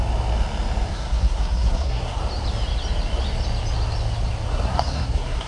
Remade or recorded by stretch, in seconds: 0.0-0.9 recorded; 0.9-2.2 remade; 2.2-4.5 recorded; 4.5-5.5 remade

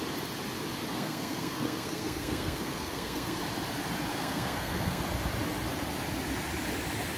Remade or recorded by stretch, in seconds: 0.0-0.9 recorded; 0.9-3.4 remade; 3.4-4.1 recorded; 4.1-5.0 remade; 5.0-7.2 recorded

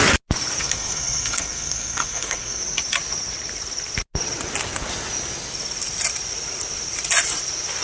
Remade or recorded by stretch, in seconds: 0.0-0.6 recorded; 0.6-2.6 remade; 2.6-7.8 recorded

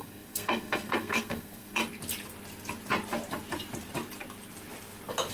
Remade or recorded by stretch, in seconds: 0.0-1.8 remade; 1.8-5.3 recorded

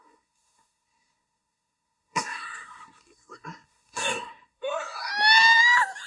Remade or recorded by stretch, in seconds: 0.0-5.1 remade; 5.1-6.1 recorded

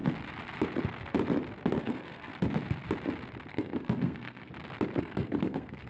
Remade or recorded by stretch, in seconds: 0.0-1.7 recorded; 1.7-2.3 remade; 2.3-3.5 recorded; 3.5-4.5 remade; 4.5-5.0 recorded; 5.0-5.9 remade

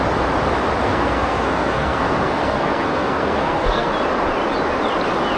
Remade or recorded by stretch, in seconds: 0.0-0.8 recorded; 0.8-3.9 remade; 3.9-5.4 recorded